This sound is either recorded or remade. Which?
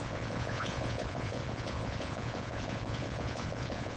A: remade